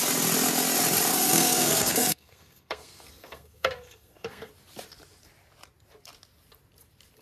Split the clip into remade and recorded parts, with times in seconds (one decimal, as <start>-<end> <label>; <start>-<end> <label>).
0.0-1.1 recorded; 1.1-4.5 remade; 4.5-7.2 recorded